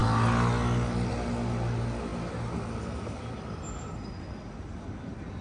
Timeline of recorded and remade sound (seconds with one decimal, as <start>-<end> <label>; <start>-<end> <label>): 0.0-5.4 recorded